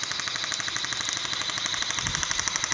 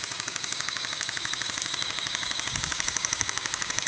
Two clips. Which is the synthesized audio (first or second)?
second